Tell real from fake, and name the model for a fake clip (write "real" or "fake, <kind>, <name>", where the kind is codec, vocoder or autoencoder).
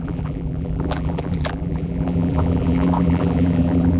fake, vocoder, BigVGAN v2